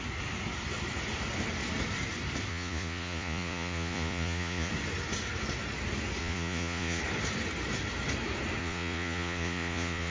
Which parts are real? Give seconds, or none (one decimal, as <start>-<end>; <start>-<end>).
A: 0.0-2.5; 4.7-6.2; 7.0-8.6